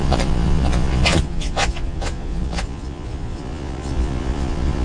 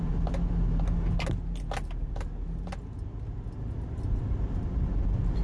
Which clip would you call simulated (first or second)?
first